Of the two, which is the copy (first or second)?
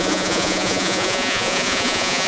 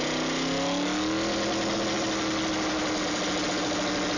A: first